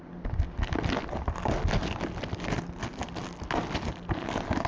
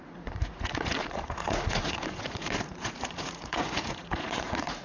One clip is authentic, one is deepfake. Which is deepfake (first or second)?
second